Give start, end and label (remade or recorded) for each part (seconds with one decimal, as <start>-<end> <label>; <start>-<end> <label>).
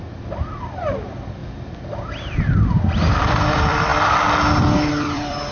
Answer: 0.0-1.4 remade; 1.4-3.1 recorded; 3.1-3.9 remade; 3.9-4.9 recorded; 4.9-5.5 remade